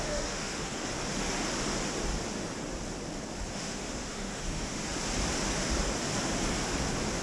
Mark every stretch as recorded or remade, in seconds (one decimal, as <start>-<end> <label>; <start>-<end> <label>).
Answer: 0.0-0.9 remade; 0.9-3.5 recorded; 3.5-4.8 remade; 4.8-7.2 recorded